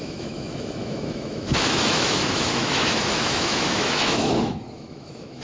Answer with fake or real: fake